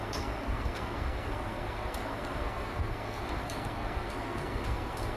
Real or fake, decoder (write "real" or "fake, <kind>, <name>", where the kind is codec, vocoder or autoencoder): fake, codec, SNAC